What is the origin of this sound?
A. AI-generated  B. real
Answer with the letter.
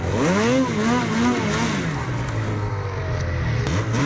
B